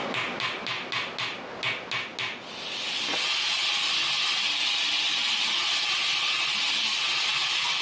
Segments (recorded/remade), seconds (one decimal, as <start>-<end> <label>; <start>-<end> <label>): 0.0-7.8 recorded